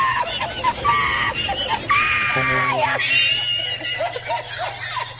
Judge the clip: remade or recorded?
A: recorded